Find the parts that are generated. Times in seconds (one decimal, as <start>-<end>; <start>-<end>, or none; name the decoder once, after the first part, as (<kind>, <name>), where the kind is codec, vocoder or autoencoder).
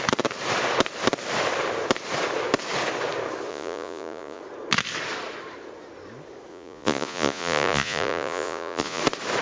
3.5-4.4 (vocoder, Vocos); 6.5-9.0